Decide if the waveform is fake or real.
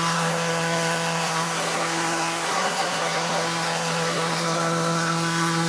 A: fake